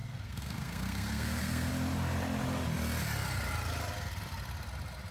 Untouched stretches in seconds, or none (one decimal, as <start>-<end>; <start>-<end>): 1.7-5.1